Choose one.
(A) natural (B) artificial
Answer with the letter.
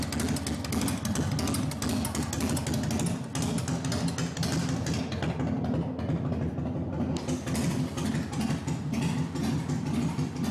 A